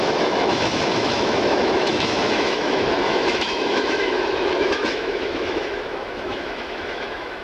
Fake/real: fake